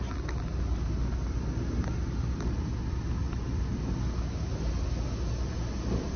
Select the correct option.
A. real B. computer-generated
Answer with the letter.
A